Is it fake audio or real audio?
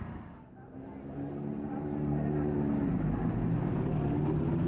real